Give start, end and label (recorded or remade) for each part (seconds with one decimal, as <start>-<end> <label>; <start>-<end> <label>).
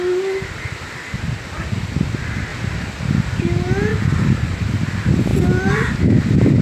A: 0.0-3.9 remade; 3.9-4.6 recorded; 4.6-6.6 remade